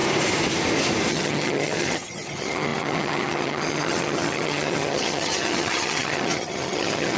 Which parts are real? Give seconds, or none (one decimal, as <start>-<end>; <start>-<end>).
0.0-1.1